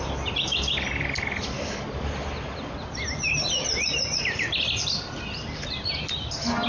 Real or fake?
real